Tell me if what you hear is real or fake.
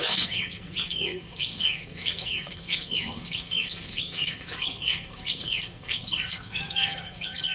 fake